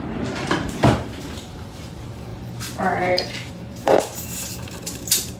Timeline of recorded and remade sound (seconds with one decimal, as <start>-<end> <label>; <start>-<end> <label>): 0.0-5.4 remade